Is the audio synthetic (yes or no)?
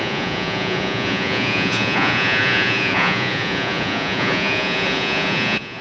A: yes